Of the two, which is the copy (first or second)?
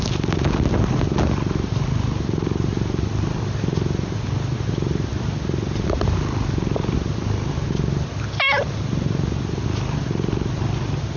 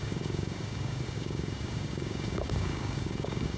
second